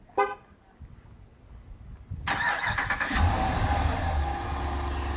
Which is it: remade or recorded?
recorded